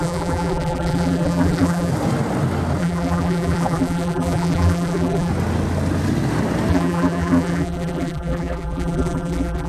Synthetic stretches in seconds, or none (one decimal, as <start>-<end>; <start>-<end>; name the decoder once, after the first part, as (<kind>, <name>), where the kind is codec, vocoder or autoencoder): 0.0-1.9 (vocoder, BigVGAN v2); 2.8-5.3; 6.7-9.7